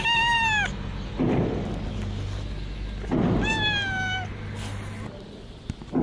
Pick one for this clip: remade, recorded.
recorded